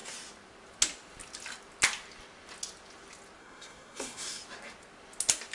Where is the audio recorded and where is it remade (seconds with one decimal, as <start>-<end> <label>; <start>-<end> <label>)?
0.0-3.4 recorded; 3.4-4.4 remade; 4.4-5.5 recorded